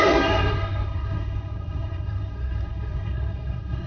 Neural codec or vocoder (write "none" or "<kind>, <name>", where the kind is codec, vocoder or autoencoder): codec, SNAC